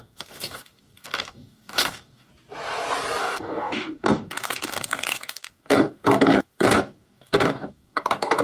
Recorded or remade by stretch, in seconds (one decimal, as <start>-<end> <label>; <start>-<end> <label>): 0.0-2.3 remade; 2.3-3.2 recorded; 3.2-8.4 remade